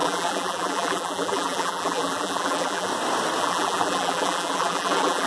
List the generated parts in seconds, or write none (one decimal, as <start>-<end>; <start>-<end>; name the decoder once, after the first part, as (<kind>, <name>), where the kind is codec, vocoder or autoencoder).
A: 0.0-2.9 (vocoder, BigVGAN v2); 3.4-5.3